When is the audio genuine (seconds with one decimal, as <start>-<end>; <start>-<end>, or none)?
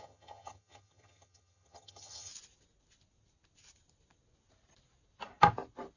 2.3-6.0